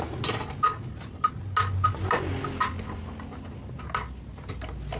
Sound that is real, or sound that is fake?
real